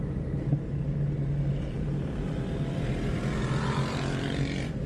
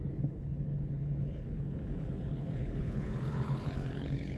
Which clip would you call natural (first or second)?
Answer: first